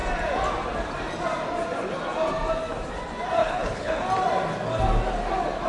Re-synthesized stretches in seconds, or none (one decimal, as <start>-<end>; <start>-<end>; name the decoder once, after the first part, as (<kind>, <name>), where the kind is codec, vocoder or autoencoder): 3.4-4.0 (codec, HILCodec)